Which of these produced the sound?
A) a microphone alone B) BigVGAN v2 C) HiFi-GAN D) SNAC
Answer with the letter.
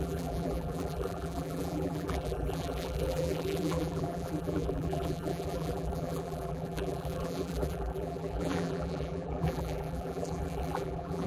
B